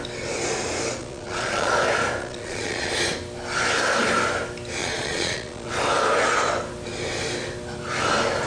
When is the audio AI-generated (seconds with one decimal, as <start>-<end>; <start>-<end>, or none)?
1.0-1.7; 2.2-2.9; 4.8-5.7